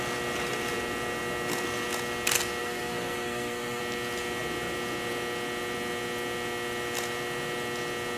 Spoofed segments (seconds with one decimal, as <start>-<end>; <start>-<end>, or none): 2.6-3.8